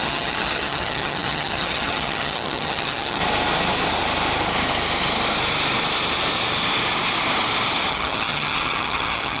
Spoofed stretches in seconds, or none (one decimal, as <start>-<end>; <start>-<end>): 0.0-3.2; 7.9-9.4